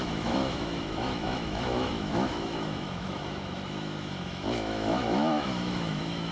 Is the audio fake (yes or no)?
yes